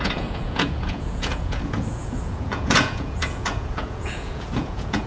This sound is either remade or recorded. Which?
remade